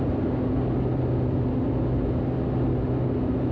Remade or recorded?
recorded